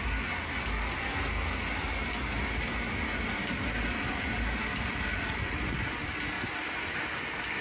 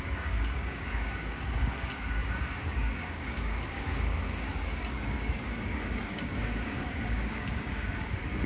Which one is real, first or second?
first